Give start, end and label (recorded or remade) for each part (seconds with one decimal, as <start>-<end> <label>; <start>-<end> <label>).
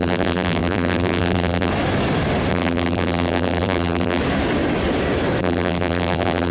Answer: 0.0-1.7 remade; 1.7-2.5 recorded; 2.5-4.2 remade; 4.2-5.4 recorded; 5.4-6.5 remade